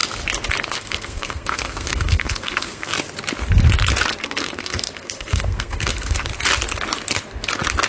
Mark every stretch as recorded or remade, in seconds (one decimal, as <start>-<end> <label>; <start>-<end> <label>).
0.0-0.7 recorded; 0.7-2.9 remade; 2.9-4.2 recorded; 4.2-6.3 remade; 6.3-7.9 recorded